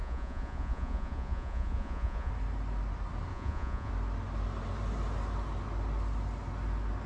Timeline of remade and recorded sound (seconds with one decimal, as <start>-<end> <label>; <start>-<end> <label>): 0.0-2.3 remade; 2.3-3.3 recorded; 3.3-3.9 remade; 3.9-7.1 recorded